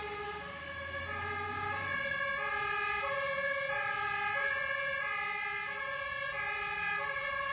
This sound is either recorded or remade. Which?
recorded